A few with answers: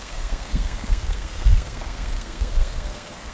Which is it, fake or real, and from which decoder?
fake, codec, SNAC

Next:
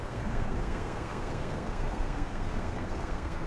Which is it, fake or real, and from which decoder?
fake, codec, SNAC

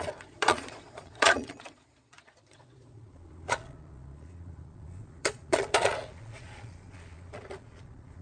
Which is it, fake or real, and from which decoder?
fake, vocoder, Vocos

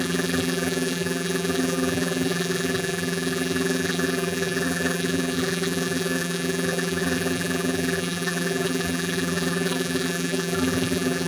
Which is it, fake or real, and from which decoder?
fake, vocoder, BigVGAN v2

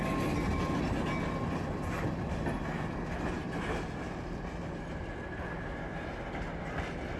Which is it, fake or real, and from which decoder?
real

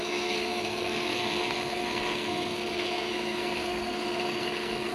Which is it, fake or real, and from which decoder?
fake, codec, SNAC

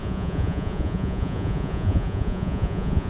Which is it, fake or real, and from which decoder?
fake, vocoder, Vocos